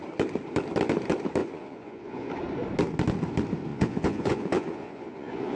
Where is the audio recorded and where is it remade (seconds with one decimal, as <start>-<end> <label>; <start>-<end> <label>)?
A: 0.0-1.4 recorded; 1.4-2.3 remade; 2.3-3.7 recorded; 3.7-5.6 remade